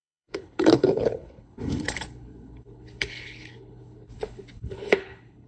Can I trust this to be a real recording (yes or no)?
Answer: no